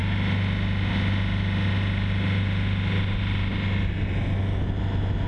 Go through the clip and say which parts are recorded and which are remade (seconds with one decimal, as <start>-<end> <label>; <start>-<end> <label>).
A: 0.0-5.3 recorded